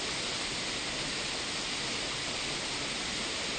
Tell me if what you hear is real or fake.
real